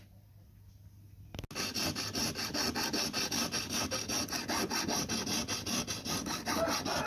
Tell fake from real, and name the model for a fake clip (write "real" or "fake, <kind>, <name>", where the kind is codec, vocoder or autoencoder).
real